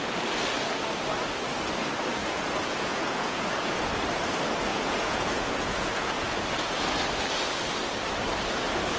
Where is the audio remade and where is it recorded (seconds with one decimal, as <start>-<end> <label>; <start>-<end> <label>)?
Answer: 0.0-2.2 recorded; 2.2-3.9 remade; 3.9-4.7 recorded; 4.7-6.4 remade; 6.4-9.0 recorded